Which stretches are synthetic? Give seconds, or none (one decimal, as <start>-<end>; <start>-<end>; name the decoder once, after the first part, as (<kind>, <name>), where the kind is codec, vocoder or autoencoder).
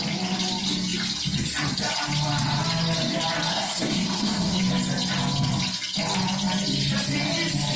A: 3.5-4.6 (codec, SNAC)